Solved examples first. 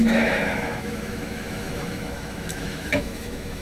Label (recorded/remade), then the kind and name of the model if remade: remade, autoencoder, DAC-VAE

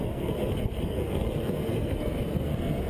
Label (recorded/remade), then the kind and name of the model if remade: remade, codec, SNAC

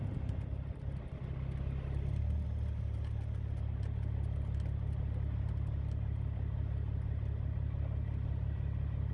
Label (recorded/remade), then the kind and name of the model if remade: recorded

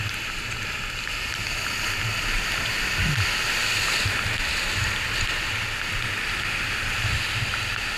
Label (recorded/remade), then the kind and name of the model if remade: recorded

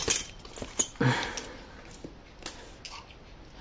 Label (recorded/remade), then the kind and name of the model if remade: recorded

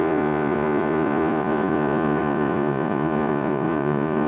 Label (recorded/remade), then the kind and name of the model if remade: remade, vocoder, Vocos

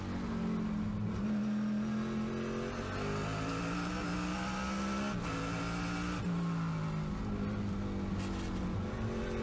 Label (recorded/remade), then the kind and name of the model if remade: recorded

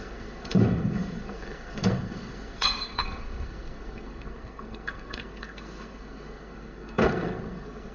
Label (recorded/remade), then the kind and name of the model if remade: remade, codec, SNAC